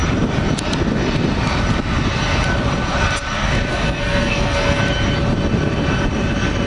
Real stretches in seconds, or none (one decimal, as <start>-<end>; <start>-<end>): 0.0-3.7; 4.8-6.7

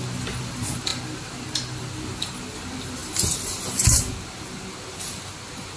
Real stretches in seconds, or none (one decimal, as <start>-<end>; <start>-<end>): 0.0-5.8